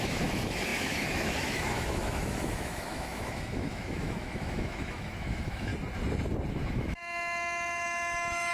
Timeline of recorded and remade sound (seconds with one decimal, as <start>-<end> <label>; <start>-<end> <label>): 0.0-5.7 remade; 5.7-6.5 recorded; 6.5-8.5 remade